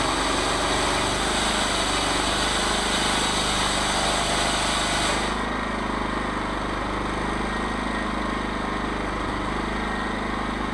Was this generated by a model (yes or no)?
no